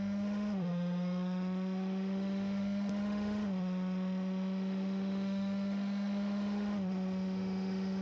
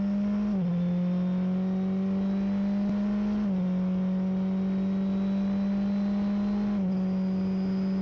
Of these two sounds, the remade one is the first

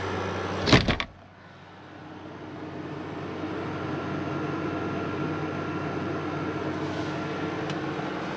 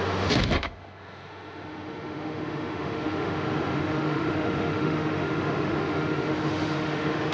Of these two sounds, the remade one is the second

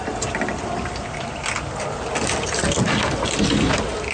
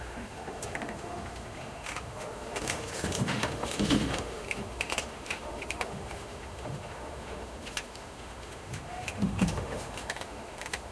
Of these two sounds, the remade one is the second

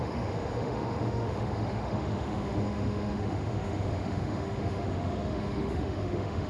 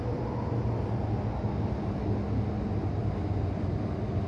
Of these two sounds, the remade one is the first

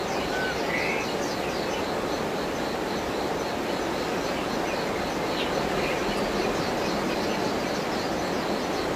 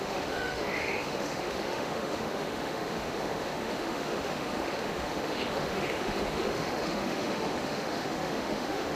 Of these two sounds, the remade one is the second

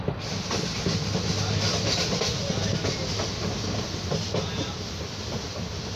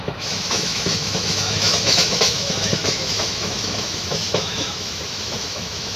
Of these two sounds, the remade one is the second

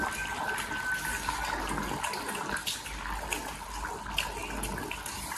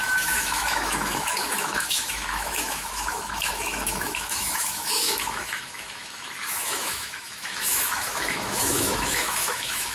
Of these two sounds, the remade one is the second